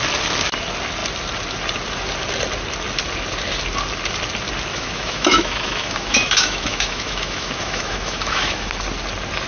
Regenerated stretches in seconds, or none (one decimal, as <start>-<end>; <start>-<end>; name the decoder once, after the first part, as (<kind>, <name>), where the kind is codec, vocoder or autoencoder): 4.7-8.7 (autoencoder, DAC-VAE)